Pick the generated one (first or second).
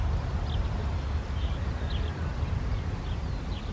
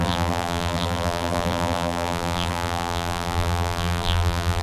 second